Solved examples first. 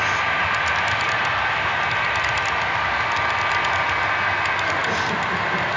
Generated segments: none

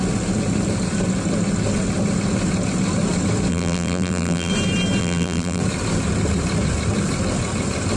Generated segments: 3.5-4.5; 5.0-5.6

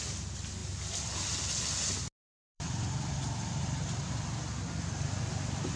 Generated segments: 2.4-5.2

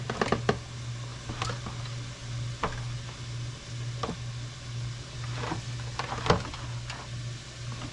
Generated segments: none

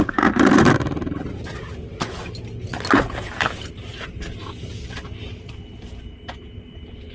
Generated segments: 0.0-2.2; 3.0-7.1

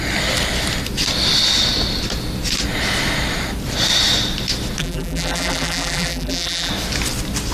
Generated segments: 4.8-6.7